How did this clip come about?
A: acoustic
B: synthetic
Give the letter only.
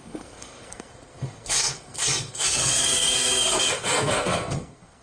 B